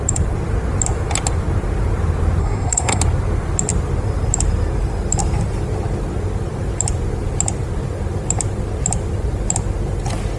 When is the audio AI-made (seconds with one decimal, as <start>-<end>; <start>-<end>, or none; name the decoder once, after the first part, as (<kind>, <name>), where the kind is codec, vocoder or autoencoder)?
2.4-3.0 (codec, SNAC)